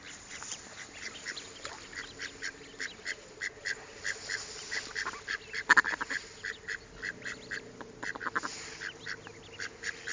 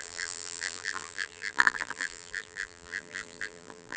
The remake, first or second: second